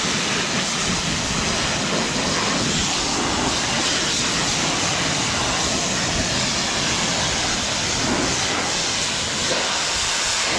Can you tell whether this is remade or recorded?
recorded